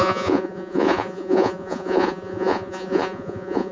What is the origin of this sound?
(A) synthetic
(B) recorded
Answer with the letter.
A